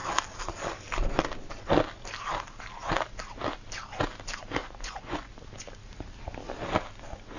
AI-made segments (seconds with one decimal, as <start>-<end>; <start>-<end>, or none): 4.6-5.3